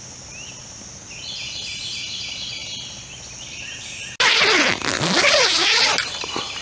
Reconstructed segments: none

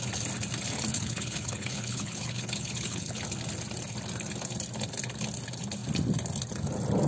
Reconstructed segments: 0.9-3.2 (codec, HILCodec)

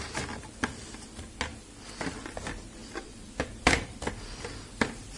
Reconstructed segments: 2.8-4.0 (vocoder, BigVGAN v2)